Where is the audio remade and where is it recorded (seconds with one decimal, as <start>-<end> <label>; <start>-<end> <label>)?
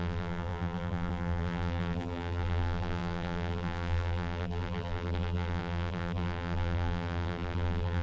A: 0.0-8.0 remade